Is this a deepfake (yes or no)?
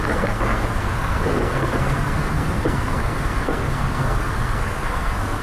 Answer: yes